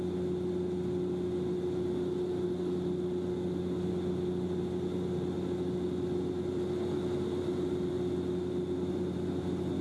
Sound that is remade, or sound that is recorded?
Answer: recorded